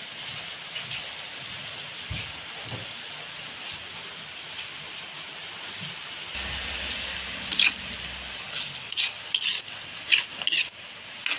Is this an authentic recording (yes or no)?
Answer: yes